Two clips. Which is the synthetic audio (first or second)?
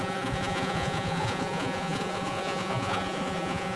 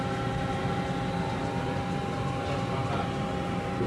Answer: first